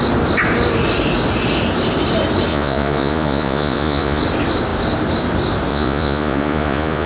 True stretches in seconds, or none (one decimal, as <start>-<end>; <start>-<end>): 0.0-2.5; 4.2-5.7